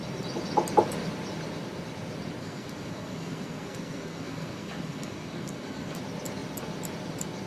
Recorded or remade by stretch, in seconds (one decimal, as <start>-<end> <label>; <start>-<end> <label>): 0.0-2.4 recorded; 2.4-6.0 remade; 6.0-7.5 recorded